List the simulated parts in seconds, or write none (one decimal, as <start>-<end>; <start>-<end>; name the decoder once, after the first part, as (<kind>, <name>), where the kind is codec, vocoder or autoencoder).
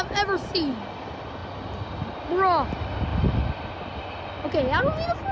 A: none